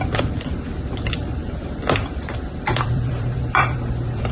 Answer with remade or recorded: remade